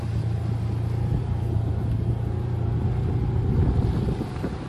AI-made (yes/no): no